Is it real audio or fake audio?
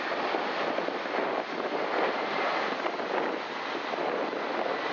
real